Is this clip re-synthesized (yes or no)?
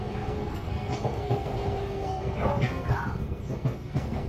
yes